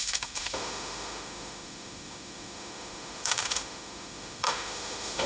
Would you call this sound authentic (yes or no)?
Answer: no